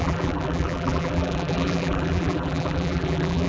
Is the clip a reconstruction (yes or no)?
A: yes